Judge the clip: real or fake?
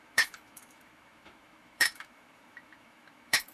fake